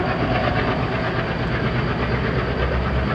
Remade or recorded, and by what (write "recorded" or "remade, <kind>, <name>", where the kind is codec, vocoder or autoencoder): recorded